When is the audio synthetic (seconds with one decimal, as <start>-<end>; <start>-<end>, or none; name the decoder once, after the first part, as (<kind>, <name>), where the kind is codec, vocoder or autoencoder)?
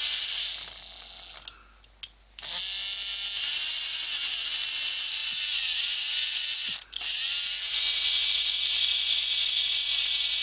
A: none